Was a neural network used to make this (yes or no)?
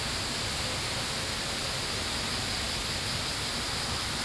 no